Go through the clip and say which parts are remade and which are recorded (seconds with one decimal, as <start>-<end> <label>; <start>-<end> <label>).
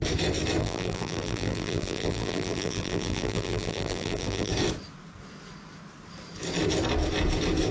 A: 0.0-0.6 recorded; 0.6-4.5 remade; 4.5-7.7 recorded